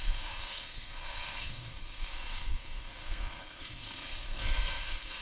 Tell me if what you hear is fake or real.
fake